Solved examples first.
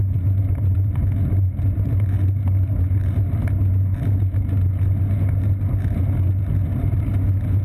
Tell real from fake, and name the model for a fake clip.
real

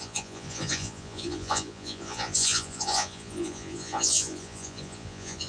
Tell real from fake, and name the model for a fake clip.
fake, vocoder, Vocos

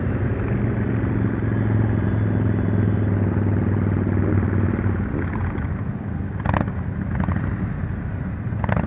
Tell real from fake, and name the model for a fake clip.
real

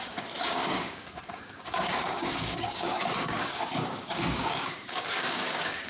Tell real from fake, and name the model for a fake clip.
fake, codec, DAC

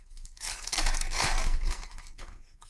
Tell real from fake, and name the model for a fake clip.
fake, codec, SNAC